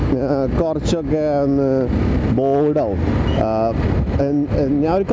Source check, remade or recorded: recorded